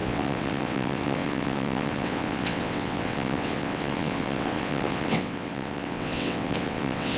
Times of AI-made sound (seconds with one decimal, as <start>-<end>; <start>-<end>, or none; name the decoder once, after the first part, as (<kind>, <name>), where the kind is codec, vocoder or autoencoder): 0.0-7.2 (vocoder, WaveNeXt)